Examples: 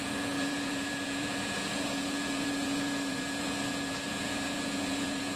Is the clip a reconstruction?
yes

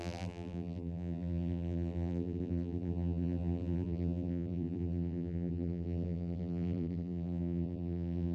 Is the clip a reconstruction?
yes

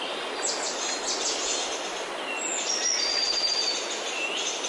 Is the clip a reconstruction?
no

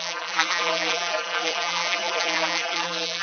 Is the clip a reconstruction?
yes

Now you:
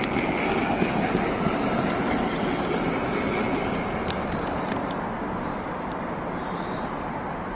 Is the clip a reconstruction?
no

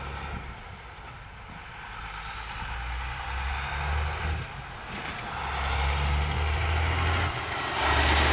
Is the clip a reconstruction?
no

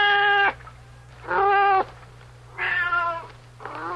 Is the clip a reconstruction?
no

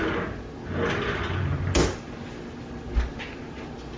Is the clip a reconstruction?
no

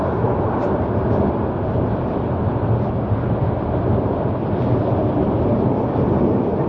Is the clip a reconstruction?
no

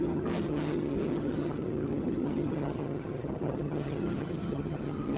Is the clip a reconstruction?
yes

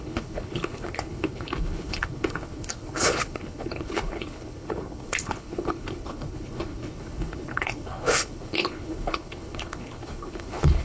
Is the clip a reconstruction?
yes